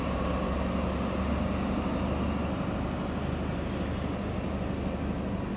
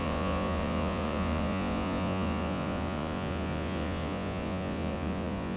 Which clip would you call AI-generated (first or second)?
second